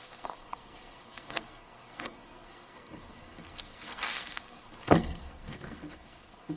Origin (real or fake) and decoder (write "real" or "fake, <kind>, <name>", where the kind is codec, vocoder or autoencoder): fake, codec, SNAC